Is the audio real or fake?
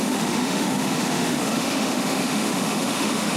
fake